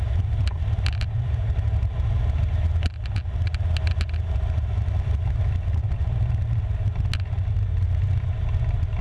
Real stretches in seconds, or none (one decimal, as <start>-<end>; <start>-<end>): 0.0-9.0